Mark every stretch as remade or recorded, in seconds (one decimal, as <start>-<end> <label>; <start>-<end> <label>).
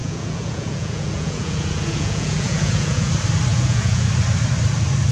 0.0-3.1 remade; 3.1-3.5 recorded; 3.5-4.1 remade; 4.1-5.1 recorded